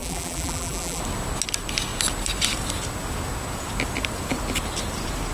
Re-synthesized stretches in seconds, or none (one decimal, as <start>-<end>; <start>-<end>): 0.0-1.0